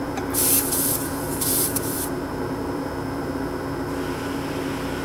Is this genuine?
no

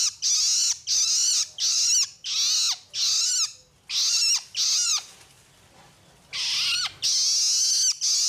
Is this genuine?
yes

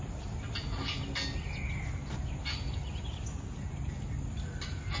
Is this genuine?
yes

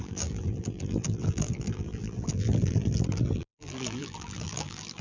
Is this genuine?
no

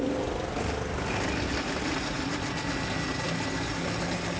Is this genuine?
yes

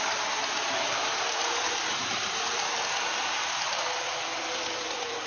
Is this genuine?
no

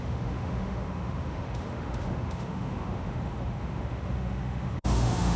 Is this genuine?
no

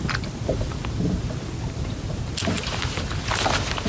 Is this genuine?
yes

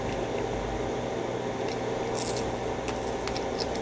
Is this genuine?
yes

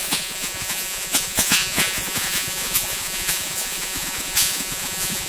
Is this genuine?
no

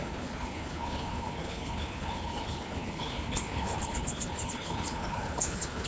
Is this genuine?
no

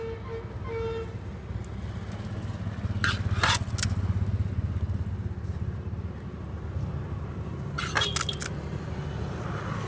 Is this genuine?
yes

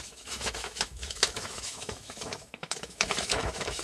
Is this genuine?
no